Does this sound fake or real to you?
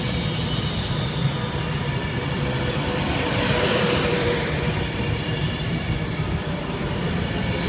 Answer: fake